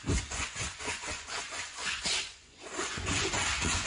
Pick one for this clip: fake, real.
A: fake